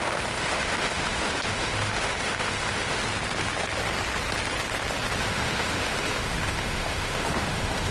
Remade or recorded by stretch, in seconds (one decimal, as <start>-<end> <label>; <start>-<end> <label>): 0.0-3.0 remade; 3.0-5.2 recorded; 5.2-7.9 remade